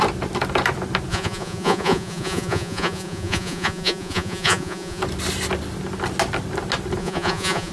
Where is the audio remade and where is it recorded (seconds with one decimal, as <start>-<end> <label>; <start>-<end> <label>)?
0.0-1.1 recorded; 1.1-5.0 remade; 5.0-7.0 recorded; 7.0-7.7 remade